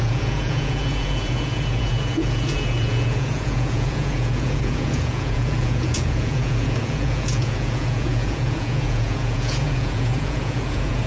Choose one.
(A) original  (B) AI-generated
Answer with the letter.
B